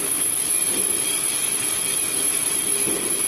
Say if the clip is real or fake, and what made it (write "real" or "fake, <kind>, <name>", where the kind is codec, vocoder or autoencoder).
real